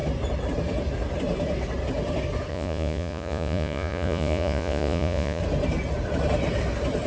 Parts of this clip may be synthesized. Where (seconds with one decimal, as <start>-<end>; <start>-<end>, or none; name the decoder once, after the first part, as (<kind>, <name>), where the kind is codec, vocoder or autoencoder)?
2.5-5.4 (vocoder, Vocos)